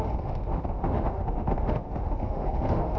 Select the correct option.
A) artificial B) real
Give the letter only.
A